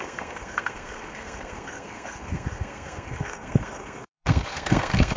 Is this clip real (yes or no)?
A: no